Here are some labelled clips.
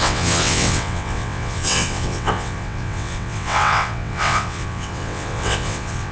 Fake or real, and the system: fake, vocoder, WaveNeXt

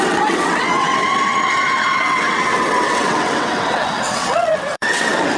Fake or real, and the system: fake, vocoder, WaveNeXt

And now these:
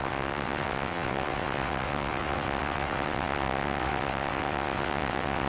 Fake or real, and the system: fake, vocoder, WaveNeXt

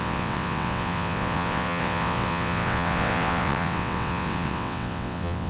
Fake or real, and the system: fake, vocoder, WaveNeXt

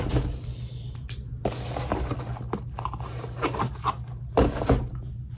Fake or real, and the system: real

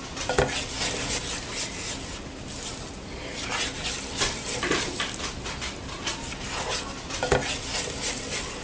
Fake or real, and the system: real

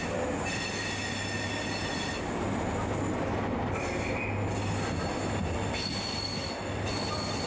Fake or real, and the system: real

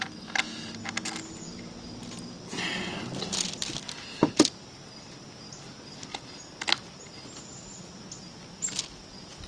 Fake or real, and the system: real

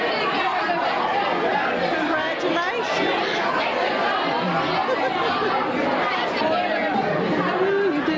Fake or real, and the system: real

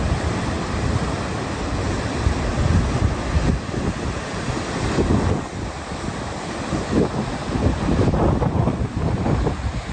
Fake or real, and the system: real